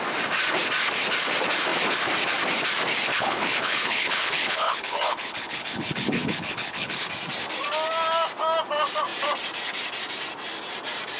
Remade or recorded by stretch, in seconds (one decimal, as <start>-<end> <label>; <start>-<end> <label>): 0.0-3.1 recorded; 3.1-7.1 remade; 7.1-11.2 recorded